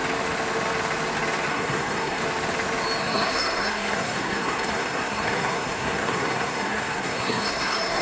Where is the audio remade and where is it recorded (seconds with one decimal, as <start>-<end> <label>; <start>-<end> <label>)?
0.0-1.5 recorded; 1.5-2.2 remade; 2.2-3.0 recorded; 3.0-8.0 remade